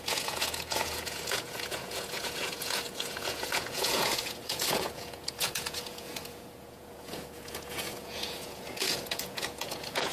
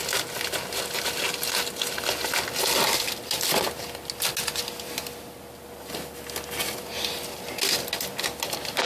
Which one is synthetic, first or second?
first